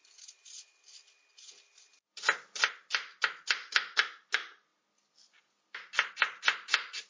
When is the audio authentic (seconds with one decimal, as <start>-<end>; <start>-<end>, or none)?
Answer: 0.0-7.1